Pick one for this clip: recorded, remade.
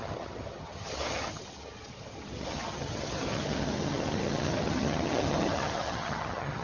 remade